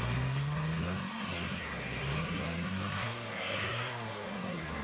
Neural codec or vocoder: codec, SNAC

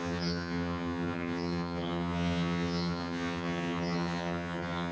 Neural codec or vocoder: vocoder, HiFi-GAN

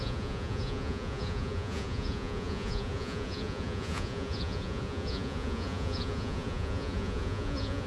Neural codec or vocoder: vocoder, Vocos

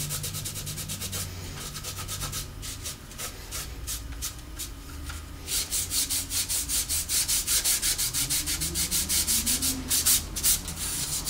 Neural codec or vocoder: none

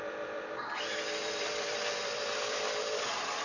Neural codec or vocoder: vocoder, BigVGAN v2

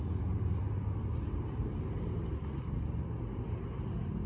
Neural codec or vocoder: none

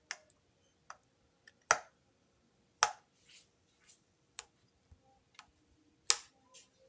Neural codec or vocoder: none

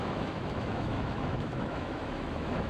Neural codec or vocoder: autoencoder, DAC-VAE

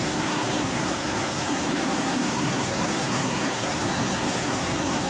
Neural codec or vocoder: codec, SNAC